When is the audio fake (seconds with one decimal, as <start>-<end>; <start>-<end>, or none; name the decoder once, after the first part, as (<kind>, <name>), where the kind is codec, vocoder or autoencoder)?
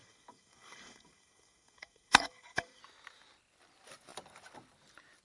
0.0-2.8 (codec, DAC)